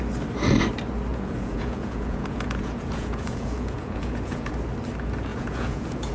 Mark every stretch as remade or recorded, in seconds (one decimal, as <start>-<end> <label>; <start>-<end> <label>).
0.0-1.1 recorded; 1.1-4.5 remade; 4.5-5.3 recorded; 5.3-6.1 remade